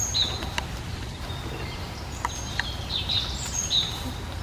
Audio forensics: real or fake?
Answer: real